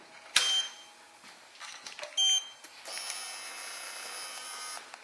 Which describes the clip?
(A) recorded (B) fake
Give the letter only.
A